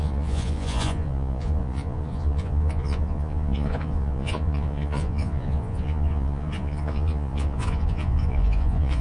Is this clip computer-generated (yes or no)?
yes